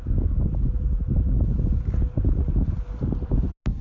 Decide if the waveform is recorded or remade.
recorded